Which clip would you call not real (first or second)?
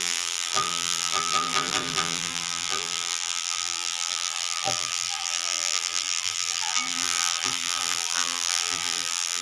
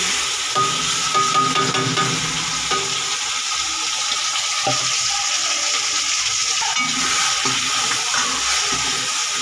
first